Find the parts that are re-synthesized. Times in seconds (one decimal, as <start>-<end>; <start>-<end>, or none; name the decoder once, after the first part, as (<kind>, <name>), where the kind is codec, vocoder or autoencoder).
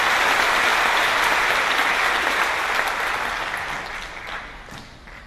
none